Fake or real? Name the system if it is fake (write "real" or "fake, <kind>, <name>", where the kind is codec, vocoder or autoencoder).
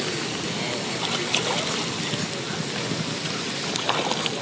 real